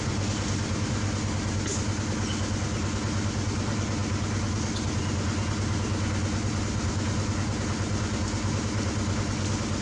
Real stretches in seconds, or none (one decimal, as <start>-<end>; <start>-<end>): 0.0-9.8